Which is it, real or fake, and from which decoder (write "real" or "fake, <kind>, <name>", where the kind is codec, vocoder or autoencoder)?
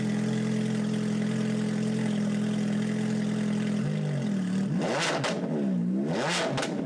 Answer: real